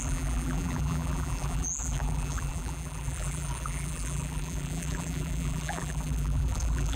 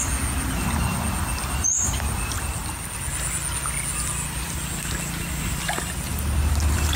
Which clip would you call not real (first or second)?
first